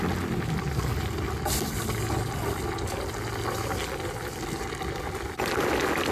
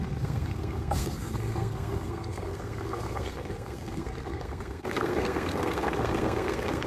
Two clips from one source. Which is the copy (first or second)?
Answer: second